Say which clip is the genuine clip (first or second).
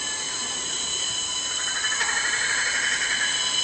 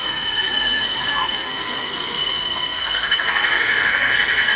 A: first